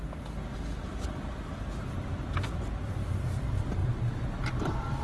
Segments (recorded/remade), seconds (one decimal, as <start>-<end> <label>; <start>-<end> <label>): 0.0-0.9 recorded; 0.9-2.9 remade; 2.9-3.8 recorded; 3.8-5.0 remade